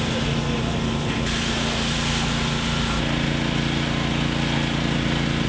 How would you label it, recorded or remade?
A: recorded